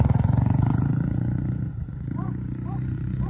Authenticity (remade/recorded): remade